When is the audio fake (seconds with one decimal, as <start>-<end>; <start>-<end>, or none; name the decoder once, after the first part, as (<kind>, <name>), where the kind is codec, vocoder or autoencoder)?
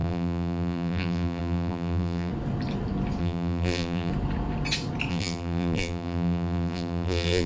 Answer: 0.0-2.3 (vocoder, BigVGAN v2); 3.2-4.1; 5.1-7.5